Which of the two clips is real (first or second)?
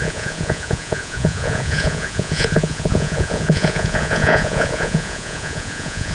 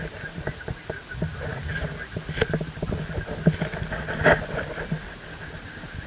second